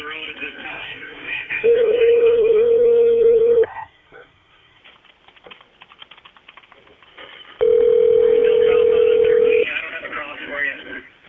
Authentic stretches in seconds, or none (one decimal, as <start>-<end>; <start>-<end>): 0.0-0.7; 4.8-11.3